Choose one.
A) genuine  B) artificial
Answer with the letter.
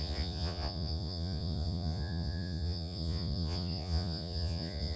B